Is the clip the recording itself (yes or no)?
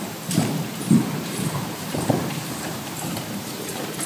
no